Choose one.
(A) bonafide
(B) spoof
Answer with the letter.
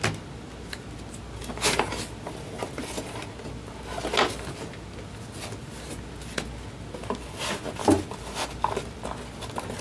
A